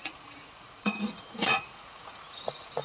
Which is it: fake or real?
fake